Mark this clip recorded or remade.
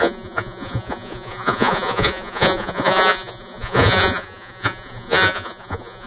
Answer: remade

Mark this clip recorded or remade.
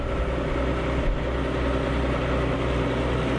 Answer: recorded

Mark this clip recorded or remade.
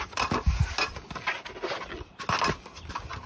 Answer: recorded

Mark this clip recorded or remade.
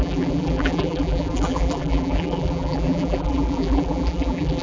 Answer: remade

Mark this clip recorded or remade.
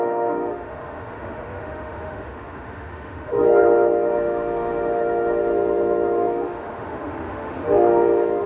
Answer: remade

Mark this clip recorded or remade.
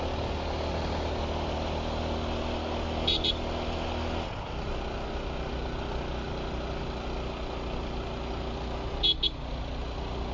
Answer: recorded